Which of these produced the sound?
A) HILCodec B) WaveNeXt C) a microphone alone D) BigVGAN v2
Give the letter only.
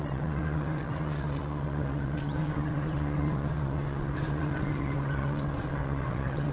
B